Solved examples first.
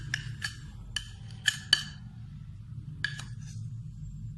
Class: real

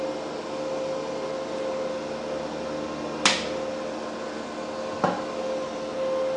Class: real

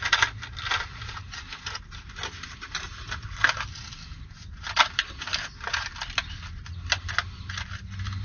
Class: real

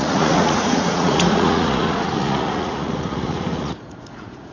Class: fake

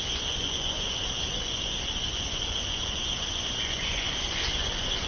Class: fake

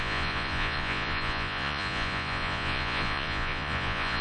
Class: fake